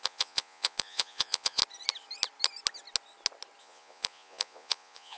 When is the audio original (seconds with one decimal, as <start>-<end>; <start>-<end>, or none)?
1.6-3.6